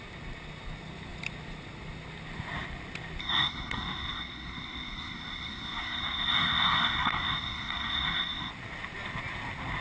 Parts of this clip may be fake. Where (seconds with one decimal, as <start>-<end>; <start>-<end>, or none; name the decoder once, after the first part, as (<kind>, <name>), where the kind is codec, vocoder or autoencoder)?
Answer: 3.2-8.5 (codec, SNAC)